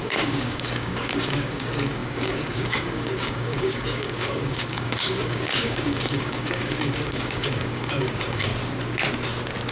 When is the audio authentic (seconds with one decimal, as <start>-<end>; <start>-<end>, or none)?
8.5-9.7